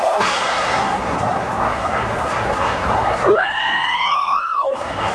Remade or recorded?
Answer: remade